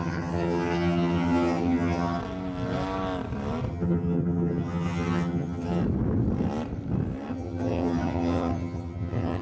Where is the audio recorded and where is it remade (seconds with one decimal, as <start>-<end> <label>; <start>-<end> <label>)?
0.0-2.2 remade; 2.2-3.7 recorded; 3.7-5.8 remade; 5.8-7.3 recorded; 7.3-9.4 remade